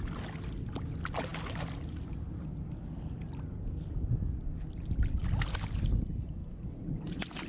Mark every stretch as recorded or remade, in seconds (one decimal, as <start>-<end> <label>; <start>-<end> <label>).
0.0-6.4 recorded; 6.4-7.0 remade; 7.0-7.5 recorded